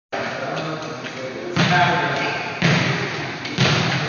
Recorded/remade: recorded